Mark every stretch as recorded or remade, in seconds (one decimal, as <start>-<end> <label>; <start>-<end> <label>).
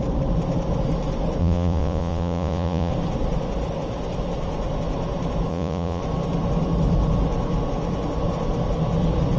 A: 0.0-1.4 recorded; 1.4-2.9 remade; 2.9-5.5 recorded; 5.5-6.0 remade; 6.0-9.4 recorded